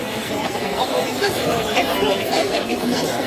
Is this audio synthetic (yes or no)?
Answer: yes